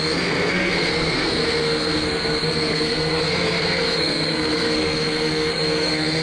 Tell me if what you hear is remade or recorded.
remade